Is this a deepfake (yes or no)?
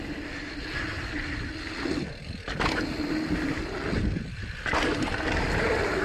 no